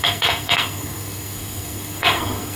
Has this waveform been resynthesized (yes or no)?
yes